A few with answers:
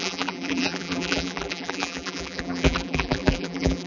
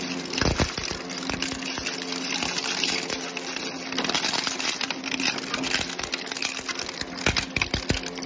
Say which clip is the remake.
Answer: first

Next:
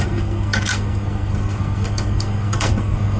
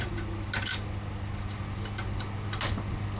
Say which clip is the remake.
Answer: first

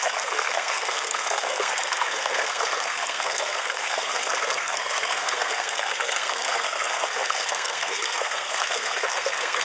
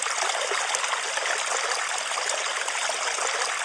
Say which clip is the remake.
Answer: first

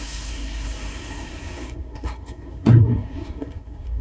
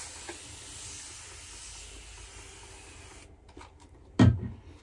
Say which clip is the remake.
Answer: first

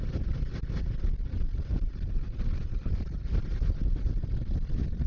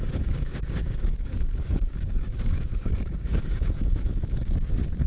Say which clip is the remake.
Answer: second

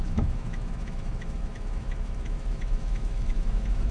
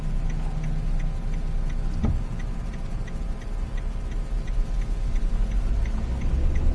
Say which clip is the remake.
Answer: first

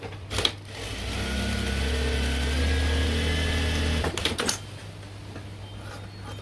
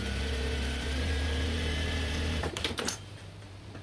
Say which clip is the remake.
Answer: second